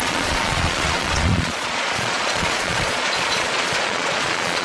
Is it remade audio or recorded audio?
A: remade